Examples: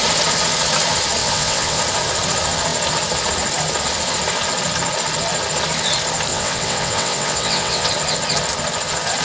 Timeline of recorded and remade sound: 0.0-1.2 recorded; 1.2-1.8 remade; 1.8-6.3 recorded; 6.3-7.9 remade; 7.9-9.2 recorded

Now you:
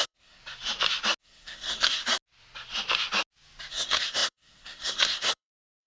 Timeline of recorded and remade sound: 0.0-0.4 remade; 0.4-1.2 recorded; 1.2-2.0 remade; 2.0-3.7 recorded; 3.7-5.9 remade

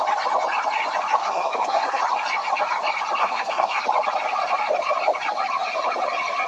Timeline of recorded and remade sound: 0.0-1.2 recorded; 1.2-2.0 remade; 2.0-3.2 recorded; 3.2-3.8 remade; 3.8-6.5 recorded

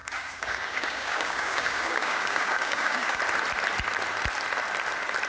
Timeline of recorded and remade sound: 0.0-3.2 remade; 3.2-5.3 recorded

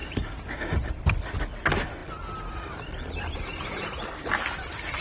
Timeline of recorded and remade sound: 0.0-1.0 remade; 1.0-2.0 recorded; 2.0-4.3 remade; 4.3-5.0 recorded

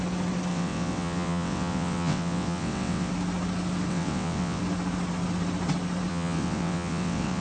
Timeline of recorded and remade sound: 0.0-0.5 recorded; 0.5-3.1 remade; 3.1-3.9 recorded; 3.9-4.6 remade; 4.6-6.1 recorded; 6.1-7.4 remade

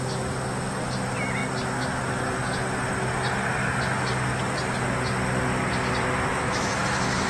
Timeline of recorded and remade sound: 0.0-6.3 recorded; 6.3-7.3 remade

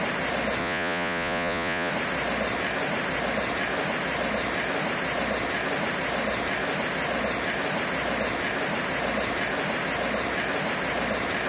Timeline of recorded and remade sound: 0.0-0.6 recorded; 0.6-1.9 remade; 1.9-11.5 recorded